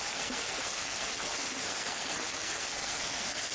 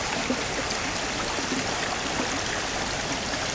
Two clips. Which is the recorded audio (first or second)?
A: second